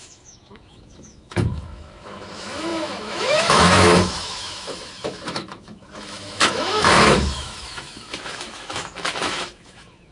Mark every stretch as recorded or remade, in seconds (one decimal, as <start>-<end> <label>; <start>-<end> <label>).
0.0-10.1 remade